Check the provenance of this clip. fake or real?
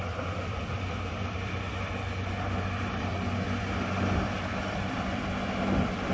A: fake